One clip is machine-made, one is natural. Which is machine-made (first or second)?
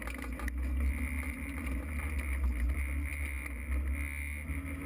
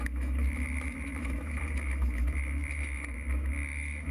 second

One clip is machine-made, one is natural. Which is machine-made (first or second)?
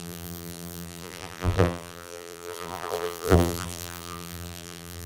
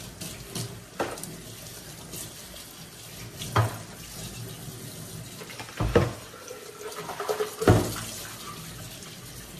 first